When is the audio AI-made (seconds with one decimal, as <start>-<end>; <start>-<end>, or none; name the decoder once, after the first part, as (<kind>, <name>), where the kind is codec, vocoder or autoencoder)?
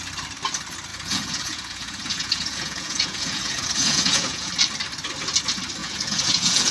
0.9-4.5 (vocoder, Vocos); 5.8-6.7